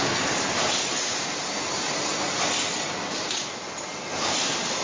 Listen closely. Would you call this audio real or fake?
real